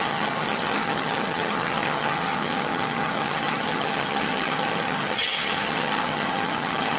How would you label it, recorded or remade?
remade